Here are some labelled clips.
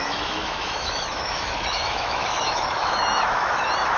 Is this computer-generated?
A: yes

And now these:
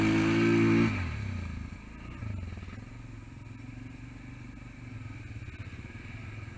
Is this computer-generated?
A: no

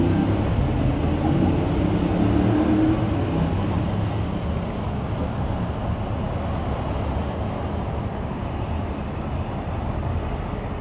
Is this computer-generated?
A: no